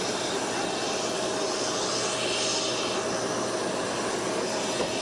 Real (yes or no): yes